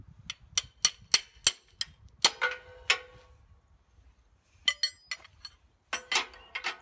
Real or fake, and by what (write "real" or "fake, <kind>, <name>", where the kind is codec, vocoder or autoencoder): real